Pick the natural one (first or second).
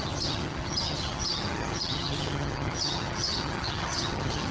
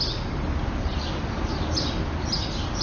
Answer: second